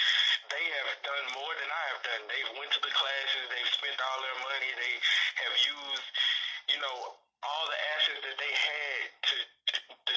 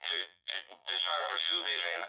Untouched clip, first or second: first